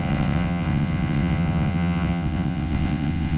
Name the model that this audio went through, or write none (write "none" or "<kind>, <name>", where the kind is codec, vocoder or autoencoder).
vocoder, WaveNeXt